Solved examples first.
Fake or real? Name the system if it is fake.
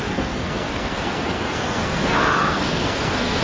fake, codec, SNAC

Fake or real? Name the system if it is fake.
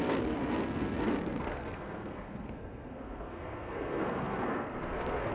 fake, codec, SNAC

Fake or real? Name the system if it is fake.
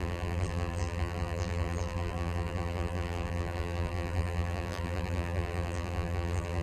fake, vocoder, BigVGAN v2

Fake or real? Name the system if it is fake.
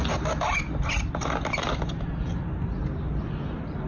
real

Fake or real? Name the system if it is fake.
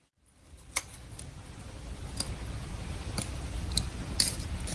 real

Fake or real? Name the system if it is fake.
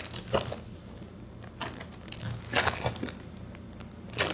real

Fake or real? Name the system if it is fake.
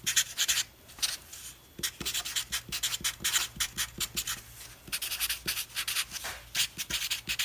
real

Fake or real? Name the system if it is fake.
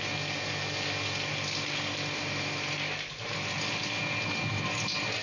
real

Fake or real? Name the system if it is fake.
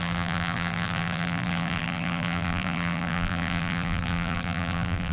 fake, vocoder, BigVGAN v2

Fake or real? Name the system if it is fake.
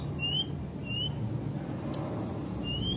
real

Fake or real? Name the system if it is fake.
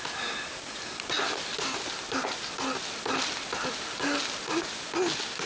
real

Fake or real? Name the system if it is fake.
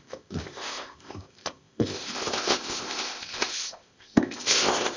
fake, codec, ZipCodec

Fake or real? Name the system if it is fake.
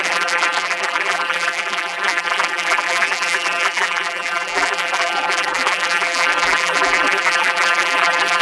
fake, vocoder, BigVGAN v2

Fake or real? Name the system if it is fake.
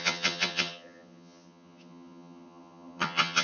fake, vocoder, HiFi-GAN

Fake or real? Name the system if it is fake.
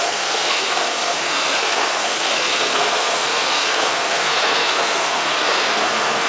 fake, codec, SNAC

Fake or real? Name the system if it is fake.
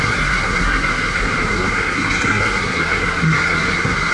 fake, codec, SNAC